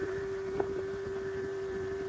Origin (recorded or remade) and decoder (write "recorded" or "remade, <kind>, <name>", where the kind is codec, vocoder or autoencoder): remade, vocoder, BigVGAN v2